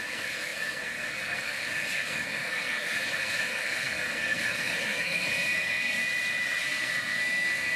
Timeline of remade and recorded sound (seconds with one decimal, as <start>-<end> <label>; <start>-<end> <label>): 0.0-6.0 remade; 6.0-6.6 recorded; 6.6-7.8 remade